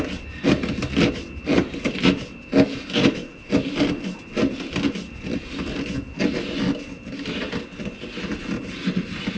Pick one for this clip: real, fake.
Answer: real